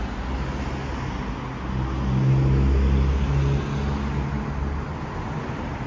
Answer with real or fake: real